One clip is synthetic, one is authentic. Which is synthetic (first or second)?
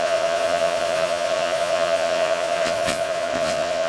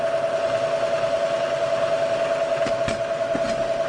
first